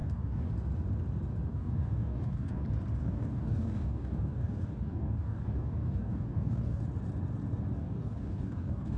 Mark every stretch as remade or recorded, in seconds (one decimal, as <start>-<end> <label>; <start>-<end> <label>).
0.0-0.5 remade; 0.5-1.5 recorded; 1.5-2.6 remade; 2.6-3.0 recorded; 3.0-6.8 remade; 6.8-7.8 recorded; 7.8-9.0 remade